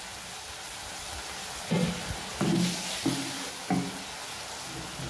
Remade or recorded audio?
recorded